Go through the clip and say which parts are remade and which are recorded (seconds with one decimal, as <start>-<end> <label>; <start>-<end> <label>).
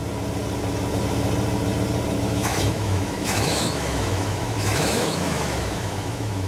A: 0.0-2.2 recorded; 2.2-6.5 remade